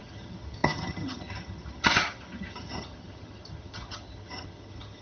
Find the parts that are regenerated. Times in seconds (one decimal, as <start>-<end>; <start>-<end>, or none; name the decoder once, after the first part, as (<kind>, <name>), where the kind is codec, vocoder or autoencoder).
0.0-5.0 (vocoder, HiFi-GAN)